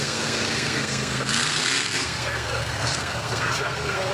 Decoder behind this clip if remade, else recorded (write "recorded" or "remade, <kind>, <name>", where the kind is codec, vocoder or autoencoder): remade, codec, SNAC